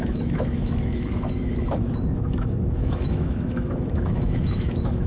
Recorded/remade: remade